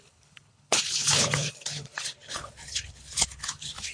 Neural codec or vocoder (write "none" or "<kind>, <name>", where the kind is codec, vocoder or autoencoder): codec, HILCodec